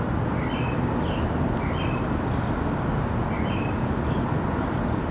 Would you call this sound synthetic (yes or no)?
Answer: no